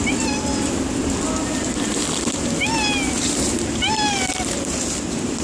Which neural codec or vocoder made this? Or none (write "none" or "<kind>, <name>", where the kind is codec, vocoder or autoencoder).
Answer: none